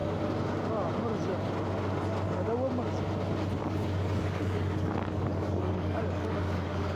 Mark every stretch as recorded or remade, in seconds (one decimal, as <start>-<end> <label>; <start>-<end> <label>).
0.0-3.6 recorded; 3.6-7.0 remade